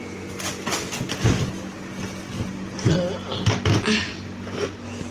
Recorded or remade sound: recorded